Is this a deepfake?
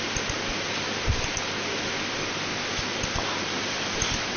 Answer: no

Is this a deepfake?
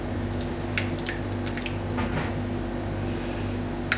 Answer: no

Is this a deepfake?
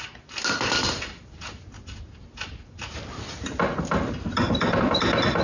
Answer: no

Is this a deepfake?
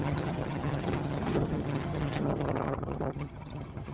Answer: yes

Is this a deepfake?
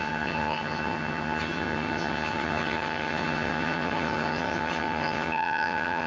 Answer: yes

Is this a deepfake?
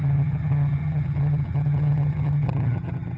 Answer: yes